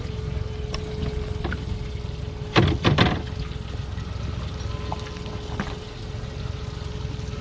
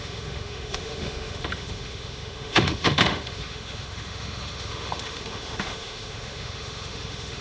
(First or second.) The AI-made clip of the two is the second